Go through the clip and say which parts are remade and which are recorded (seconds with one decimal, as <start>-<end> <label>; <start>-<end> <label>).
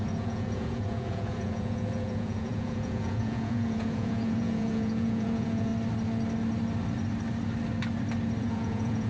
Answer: 0.0-5.7 remade; 5.7-8.4 recorded; 8.4-9.1 remade